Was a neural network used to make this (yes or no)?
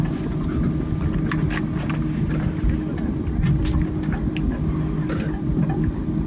no